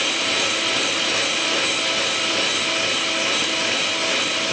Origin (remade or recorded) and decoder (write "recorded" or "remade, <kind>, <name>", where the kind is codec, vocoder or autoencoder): remade, vocoder, BigVGAN v2